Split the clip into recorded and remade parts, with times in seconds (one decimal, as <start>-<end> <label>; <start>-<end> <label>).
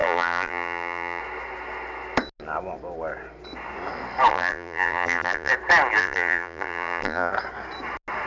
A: 0.0-1.2 remade; 1.2-4.3 recorded; 4.3-5.5 remade; 5.5-6.0 recorded; 6.0-7.3 remade; 7.3-8.3 recorded